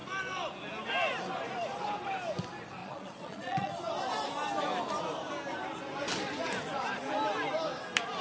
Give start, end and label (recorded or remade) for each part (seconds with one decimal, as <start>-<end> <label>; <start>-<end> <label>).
0.0-2.8 recorded; 2.8-3.7 remade; 3.7-8.2 recorded